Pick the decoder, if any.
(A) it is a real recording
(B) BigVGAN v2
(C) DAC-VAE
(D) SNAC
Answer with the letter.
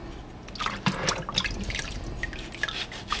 A